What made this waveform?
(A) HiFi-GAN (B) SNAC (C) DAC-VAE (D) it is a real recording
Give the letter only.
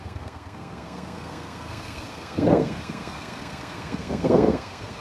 B